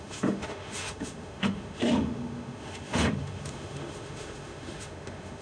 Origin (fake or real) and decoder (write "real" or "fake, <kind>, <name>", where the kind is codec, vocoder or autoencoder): fake, autoencoder, DAC-VAE